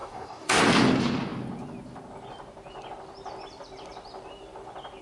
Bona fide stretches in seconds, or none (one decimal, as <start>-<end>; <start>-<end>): 0.6-5.0